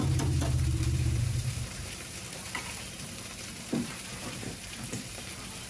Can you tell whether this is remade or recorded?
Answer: remade